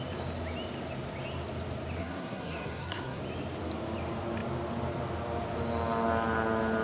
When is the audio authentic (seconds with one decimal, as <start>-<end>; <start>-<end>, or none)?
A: 0.0-2.0; 3.2-6.8